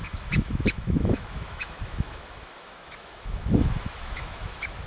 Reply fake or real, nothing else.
fake